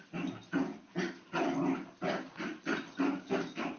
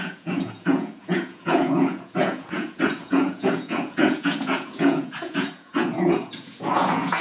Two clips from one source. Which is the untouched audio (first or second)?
first